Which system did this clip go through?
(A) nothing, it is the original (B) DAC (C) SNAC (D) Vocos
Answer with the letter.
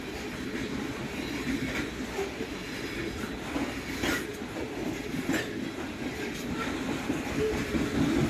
A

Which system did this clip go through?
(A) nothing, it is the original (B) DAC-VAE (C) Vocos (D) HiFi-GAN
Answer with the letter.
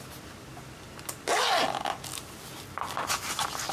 A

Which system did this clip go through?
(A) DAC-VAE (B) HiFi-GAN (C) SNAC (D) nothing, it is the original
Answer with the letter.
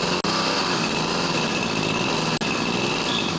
D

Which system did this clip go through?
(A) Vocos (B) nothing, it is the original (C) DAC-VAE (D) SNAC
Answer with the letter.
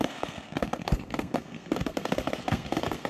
D